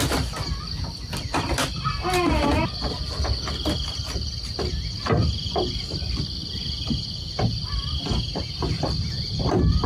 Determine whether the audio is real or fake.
real